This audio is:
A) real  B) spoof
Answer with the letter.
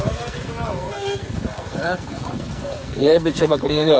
B